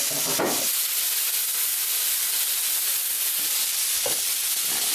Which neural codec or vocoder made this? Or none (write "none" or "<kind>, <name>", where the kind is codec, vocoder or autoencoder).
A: none